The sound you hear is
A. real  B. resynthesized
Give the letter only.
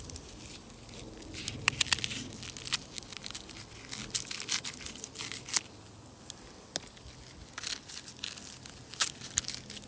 A